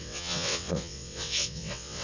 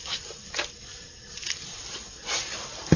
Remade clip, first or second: first